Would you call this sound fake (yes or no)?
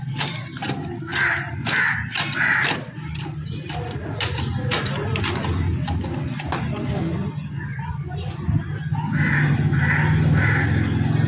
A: no